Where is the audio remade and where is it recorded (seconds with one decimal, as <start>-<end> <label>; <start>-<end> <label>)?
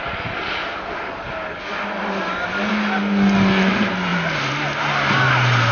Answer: 0.0-5.7 recorded